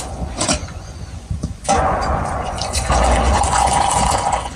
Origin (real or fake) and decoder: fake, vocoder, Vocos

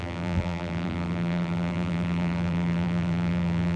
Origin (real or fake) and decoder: fake, vocoder, BigVGAN v2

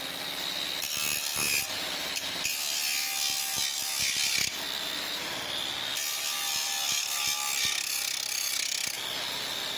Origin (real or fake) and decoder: real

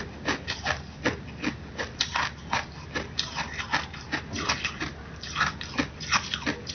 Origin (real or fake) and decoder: real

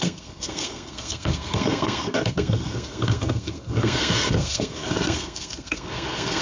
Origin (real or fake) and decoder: fake, codec, SNAC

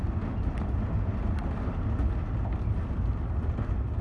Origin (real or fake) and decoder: real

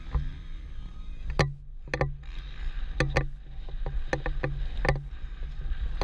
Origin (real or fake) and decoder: real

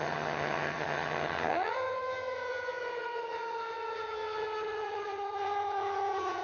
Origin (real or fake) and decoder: fake, vocoder, HiFi-GAN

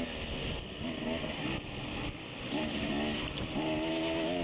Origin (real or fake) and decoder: real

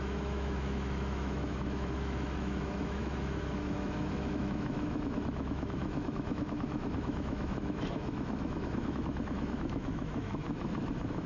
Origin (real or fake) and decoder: fake, autoencoder, DAC-VAE